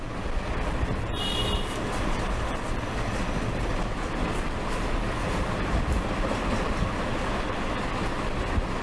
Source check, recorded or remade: remade